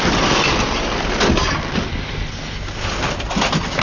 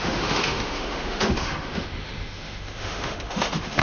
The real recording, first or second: first